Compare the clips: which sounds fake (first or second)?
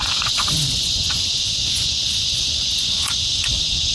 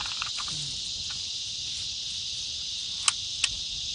first